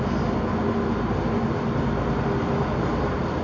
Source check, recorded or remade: recorded